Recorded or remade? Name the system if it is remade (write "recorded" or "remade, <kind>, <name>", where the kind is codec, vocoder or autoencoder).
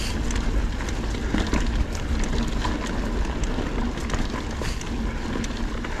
recorded